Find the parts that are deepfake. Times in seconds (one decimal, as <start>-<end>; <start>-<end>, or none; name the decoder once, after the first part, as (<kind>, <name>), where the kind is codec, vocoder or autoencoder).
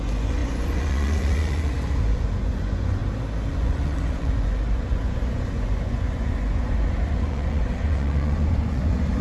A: 0.0-3.0 (vocoder, Vocos); 3.5-9.2